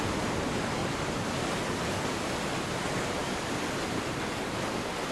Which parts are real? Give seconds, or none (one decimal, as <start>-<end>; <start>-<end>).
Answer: 0.0-0.8; 2.3-5.1